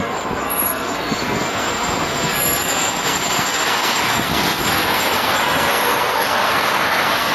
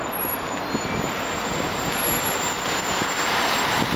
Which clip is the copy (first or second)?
first